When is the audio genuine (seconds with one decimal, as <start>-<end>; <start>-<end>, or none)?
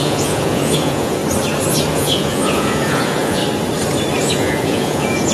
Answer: 1.2-1.9; 3.4-4.2